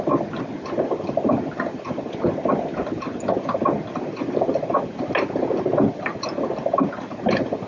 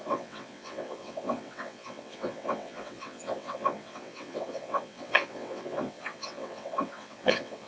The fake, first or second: second